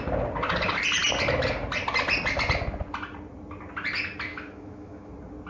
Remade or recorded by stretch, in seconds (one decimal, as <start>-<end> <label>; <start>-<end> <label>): 0.0-4.3 recorded; 4.3-5.1 remade; 5.1-5.5 recorded